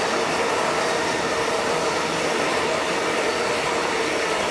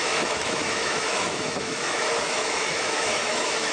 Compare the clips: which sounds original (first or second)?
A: first